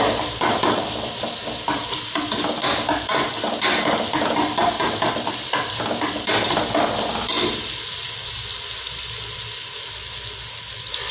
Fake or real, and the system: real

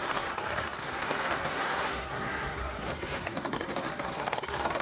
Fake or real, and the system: fake, codec, SNAC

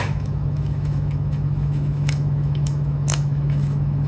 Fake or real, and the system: fake, autoencoder, DAC-VAE